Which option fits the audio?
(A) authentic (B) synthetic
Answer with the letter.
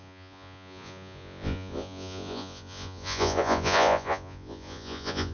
B